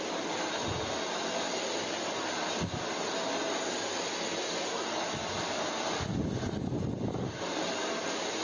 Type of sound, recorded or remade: recorded